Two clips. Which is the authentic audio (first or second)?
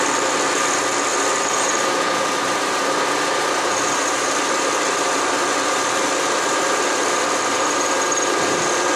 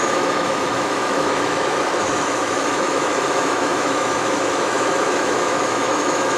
first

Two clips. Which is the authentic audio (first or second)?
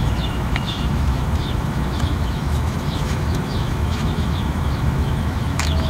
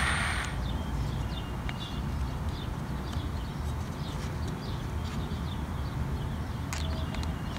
second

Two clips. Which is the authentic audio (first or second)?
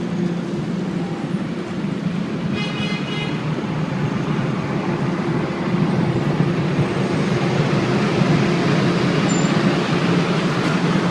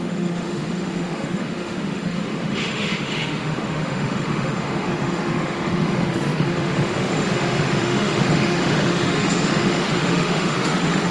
first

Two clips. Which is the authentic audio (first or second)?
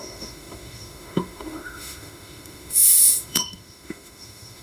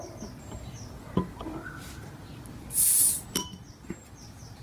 second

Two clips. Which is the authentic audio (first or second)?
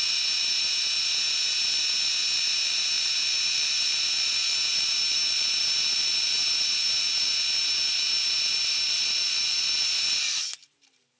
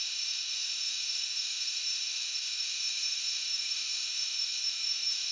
first